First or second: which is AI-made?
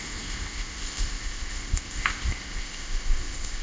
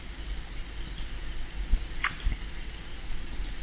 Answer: first